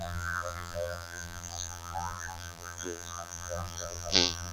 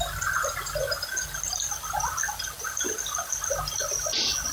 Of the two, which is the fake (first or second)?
first